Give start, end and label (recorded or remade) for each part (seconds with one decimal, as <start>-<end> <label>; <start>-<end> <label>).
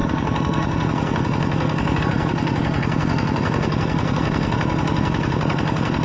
0.0-6.0 remade